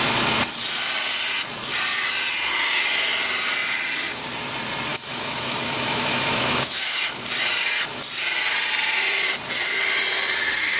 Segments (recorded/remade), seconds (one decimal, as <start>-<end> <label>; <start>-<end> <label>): 0.0-4.9 recorded; 4.9-7.0 remade; 7.0-10.8 recorded